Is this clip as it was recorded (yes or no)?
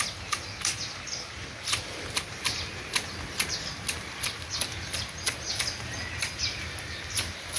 yes